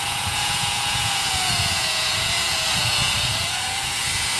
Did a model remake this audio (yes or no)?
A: yes